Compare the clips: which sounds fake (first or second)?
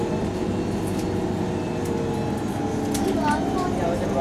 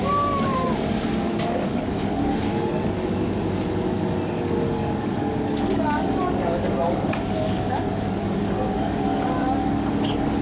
second